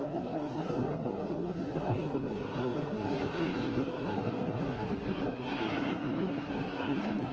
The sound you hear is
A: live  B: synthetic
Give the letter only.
B